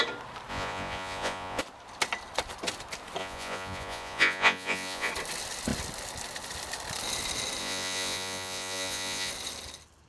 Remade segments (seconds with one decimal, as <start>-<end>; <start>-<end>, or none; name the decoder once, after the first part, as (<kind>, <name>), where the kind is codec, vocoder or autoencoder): 0.5-1.6 (vocoder, Vocos); 3.2-5.1; 7.6-9.3